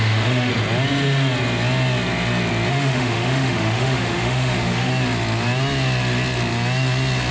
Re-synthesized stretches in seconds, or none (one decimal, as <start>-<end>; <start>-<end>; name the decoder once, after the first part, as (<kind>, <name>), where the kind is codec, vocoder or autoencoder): 0.0-0.5 (autoencoder, DAC-VAE); 2.7-4.9